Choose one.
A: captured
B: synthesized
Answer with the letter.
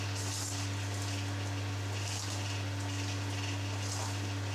A